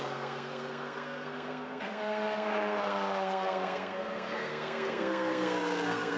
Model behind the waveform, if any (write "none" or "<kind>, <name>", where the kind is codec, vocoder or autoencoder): codec, SNAC